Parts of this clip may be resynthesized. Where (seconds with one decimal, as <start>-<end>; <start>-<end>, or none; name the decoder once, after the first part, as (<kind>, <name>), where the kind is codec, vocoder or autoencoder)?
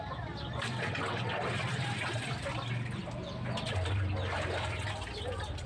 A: none